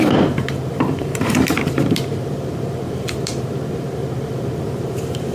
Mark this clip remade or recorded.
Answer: remade